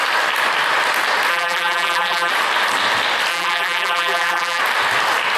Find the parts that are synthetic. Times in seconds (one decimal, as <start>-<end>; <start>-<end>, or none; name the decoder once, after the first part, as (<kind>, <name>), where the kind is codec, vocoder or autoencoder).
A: 1.3-2.3 (vocoder, BigVGAN v2); 3.3-4.6